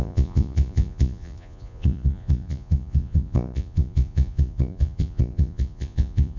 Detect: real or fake fake